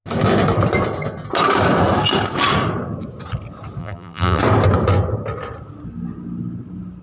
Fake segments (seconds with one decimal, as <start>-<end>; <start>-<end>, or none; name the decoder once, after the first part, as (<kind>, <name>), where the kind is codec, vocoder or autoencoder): 3.8-4.4 (vocoder, BigVGAN v2)